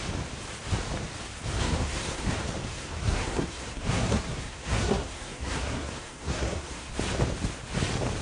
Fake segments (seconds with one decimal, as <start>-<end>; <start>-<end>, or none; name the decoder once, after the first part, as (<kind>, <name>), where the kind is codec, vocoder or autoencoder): 1.6-2.3 (codec, SNAC); 2.7-6.9